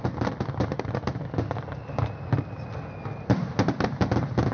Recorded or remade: recorded